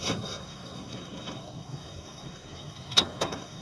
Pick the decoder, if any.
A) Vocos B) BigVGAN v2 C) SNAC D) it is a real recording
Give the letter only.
C